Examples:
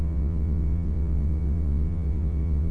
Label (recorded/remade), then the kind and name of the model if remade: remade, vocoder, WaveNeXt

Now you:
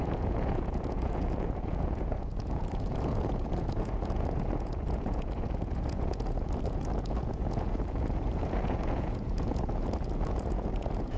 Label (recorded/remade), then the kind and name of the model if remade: remade, vocoder, Vocos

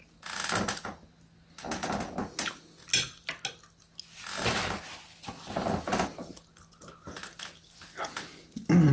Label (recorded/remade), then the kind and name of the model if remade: recorded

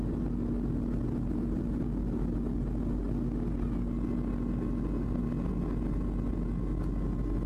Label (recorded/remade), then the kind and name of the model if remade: recorded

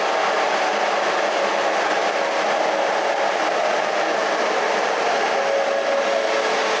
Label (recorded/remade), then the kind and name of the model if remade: recorded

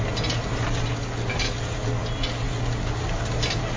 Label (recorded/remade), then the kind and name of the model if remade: recorded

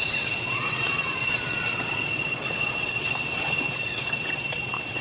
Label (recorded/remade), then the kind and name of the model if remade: remade, vocoder, WaveNeXt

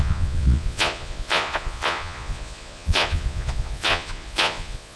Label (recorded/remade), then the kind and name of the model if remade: remade, vocoder, Vocos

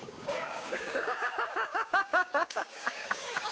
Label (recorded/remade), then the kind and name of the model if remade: remade, codec, DAC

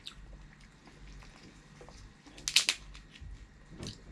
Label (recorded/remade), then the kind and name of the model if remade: recorded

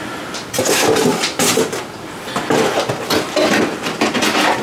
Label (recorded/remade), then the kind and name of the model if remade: recorded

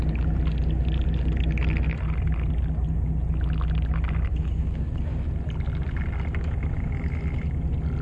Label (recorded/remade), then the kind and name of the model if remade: recorded